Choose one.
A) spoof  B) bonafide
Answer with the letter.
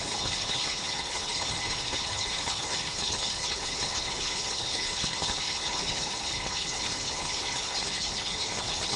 A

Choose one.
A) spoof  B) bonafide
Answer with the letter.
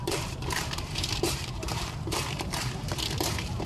A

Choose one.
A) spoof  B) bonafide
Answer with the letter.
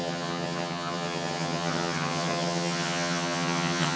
A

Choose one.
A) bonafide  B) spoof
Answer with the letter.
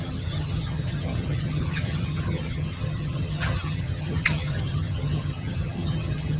B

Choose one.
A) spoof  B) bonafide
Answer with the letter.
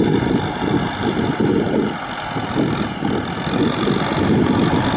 B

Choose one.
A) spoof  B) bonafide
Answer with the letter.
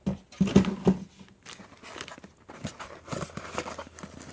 B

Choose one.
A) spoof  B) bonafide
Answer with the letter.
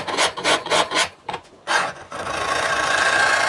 A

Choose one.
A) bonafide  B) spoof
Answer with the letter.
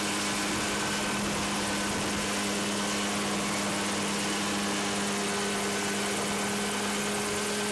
A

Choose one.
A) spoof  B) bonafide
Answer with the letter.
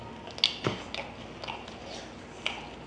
B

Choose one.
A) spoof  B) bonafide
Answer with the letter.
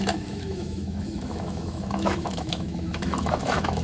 A